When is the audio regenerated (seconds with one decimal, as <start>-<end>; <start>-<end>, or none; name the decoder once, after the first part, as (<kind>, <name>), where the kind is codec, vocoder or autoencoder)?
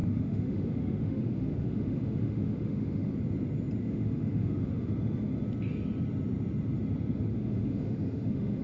0.0-3.1 (autoencoder, DAC-VAE); 3.8-4.9; 7.3-8.6